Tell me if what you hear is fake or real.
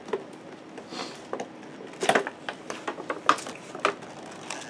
real